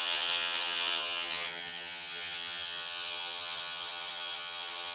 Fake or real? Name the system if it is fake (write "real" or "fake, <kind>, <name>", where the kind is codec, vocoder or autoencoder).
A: fake, vocoder, HiFi-GAN